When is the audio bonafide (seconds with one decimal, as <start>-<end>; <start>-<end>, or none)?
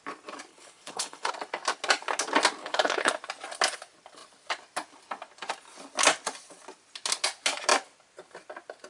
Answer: 0.0-0.5; 1.3-2.6; 3.1-8.9